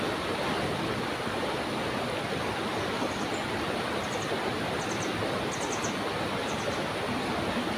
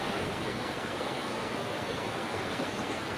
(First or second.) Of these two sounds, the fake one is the second